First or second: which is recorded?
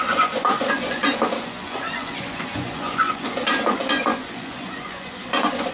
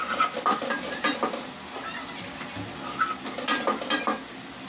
second